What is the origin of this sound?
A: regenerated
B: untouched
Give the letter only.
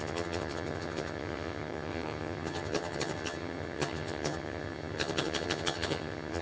A